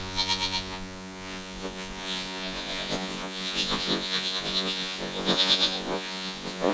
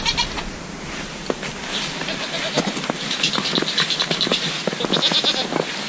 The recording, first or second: second